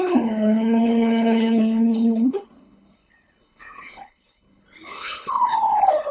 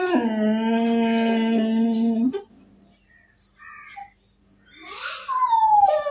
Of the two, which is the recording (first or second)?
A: second